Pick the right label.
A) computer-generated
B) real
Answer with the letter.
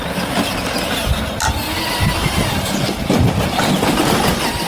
B